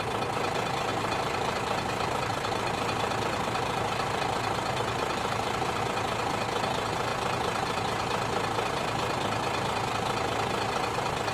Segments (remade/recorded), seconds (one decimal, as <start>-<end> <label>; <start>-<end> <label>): 0.0-0.9 recorded; 0.9-5.8 remade; 5.8-11.3 recorded

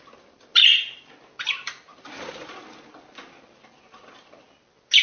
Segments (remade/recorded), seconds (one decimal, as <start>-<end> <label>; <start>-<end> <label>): 0.0-5.0 recorded

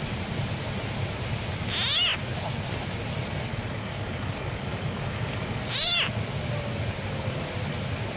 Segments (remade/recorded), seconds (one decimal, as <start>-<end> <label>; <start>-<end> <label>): 0.0-3.5 recorded; 3.5-5.6 remade; 5.6-8.2 recorded

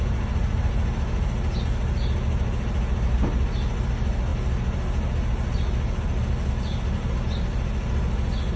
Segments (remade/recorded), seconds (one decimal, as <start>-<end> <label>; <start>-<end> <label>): 0.0-8.6 recorded

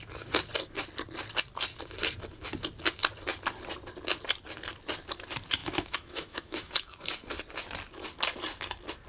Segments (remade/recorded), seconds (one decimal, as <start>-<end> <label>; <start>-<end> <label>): 0.0-5.6 recorded; 5.6-7.0 remade; 7.0-9.1 recorded

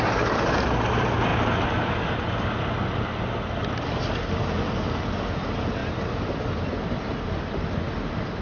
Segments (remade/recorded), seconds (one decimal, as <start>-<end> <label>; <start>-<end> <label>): 0.0-8.4 recorded

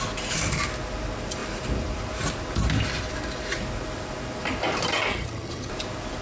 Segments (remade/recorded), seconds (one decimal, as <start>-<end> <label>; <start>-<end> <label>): 0.0-5.1 recorded; 5.1-5.7 remade; 5.7-6.2 recorded